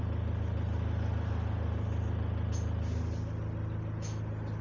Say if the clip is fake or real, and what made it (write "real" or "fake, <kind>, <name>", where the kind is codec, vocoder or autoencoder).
real